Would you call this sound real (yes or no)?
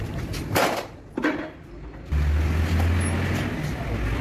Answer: yes